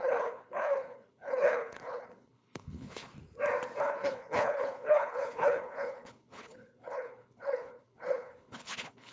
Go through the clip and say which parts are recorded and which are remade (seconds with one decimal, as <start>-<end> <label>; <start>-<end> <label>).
0.0-3.1 remade; 3.1-3.8 recorded; 3.8-9.1 remade